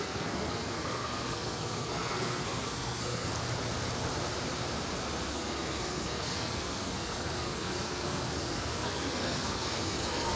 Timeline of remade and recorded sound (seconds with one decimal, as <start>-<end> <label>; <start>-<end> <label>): 0.0-3.3 remade; 3.3-5.3 recorded; 5.3-10.4 remade